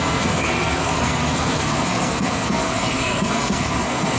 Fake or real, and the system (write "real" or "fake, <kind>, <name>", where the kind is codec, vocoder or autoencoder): fake, codec, SNAC